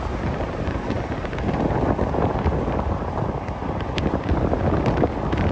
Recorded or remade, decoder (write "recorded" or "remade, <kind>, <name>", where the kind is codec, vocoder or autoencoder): recorded